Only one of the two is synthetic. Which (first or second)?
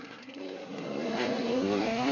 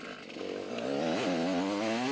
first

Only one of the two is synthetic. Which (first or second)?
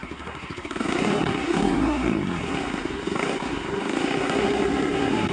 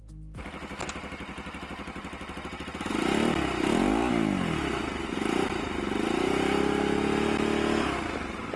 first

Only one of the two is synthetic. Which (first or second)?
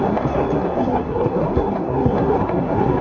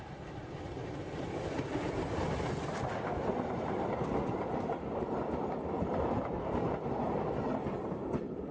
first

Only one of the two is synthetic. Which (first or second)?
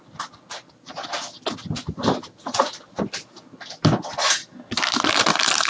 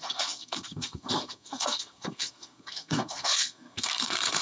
second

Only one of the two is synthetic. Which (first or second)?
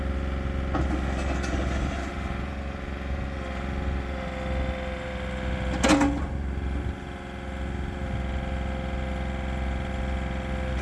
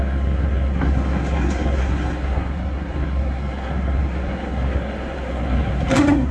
second